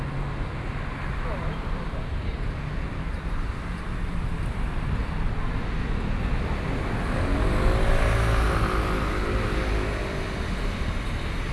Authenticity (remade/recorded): recorded